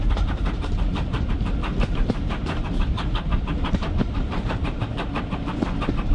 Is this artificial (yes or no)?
yes